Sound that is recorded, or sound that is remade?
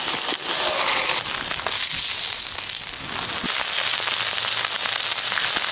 recorded